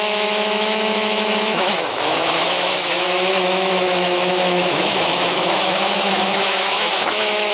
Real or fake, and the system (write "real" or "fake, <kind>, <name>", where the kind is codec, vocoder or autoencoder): fake, autoencoder, DAC-VAE